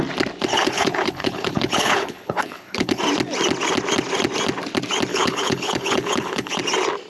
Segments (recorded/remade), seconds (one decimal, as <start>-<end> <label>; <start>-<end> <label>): 0.0-0.5 recorded; 0.5-3.0 remade; 3.0-5.1 recorded; 5.1-6.6 remade; 6.6-7.1 recorded